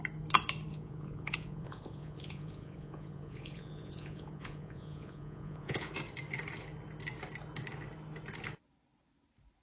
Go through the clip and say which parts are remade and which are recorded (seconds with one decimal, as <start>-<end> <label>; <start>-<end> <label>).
0.0-0.7 recorded; 0.7-5.9 remade; 5.9-9.6 recorded